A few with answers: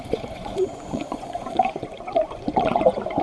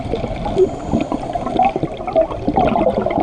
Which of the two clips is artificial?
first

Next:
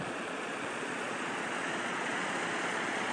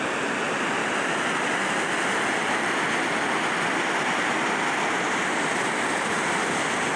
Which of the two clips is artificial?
first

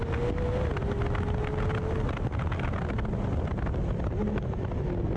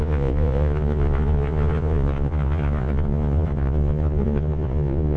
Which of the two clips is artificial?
second